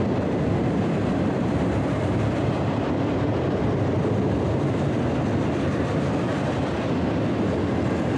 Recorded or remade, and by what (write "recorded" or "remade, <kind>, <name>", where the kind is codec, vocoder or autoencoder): recorded